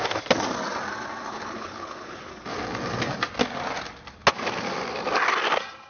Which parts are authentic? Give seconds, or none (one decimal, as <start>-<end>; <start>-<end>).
0.0-1.3; 2.3-5.9